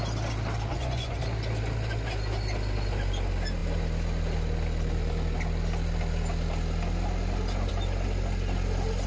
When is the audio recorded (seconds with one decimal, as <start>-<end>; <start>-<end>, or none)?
0.0-0.7; 1.2-9.1